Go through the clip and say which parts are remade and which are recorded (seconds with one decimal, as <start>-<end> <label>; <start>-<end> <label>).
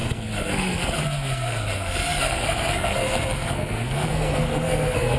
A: 0.0-5.2 remade